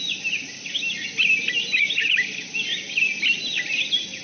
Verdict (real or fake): real